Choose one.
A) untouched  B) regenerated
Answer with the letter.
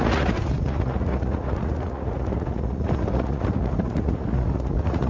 B